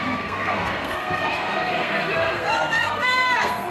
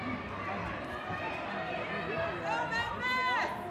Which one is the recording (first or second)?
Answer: second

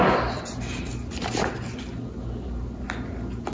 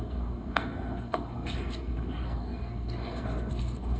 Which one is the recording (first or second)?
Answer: first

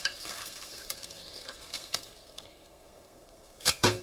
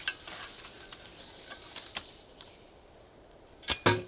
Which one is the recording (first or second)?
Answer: second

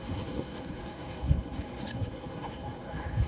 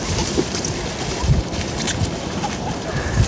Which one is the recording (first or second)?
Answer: second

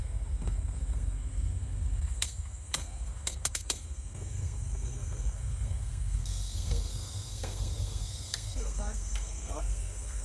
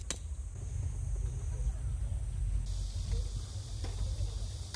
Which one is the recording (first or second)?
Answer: second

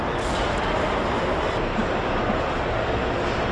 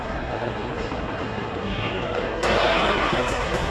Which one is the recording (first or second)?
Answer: first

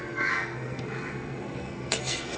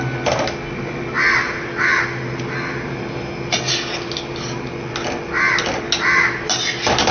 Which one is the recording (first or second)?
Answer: second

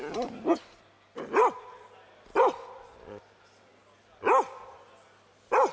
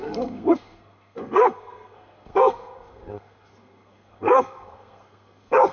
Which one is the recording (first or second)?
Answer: first